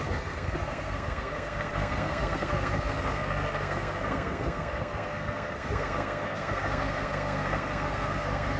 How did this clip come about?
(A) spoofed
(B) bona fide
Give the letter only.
A